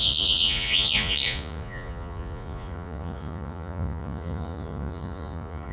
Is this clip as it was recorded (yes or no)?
no